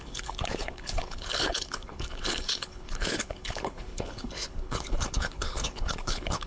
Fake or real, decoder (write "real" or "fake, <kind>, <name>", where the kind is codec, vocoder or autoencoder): fake, codec, HILCodec